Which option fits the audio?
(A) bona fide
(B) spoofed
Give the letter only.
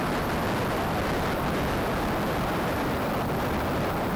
A